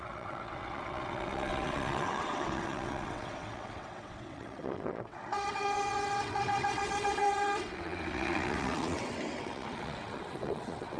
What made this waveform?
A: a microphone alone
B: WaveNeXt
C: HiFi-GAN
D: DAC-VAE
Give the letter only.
B